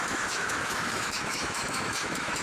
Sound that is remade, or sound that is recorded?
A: remade